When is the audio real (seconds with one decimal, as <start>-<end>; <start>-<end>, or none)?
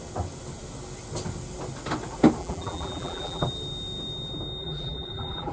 0.0-2.4; 3.5-4.6